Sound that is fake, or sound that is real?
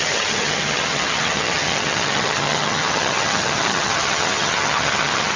fake